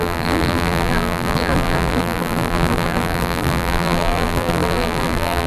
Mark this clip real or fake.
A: fake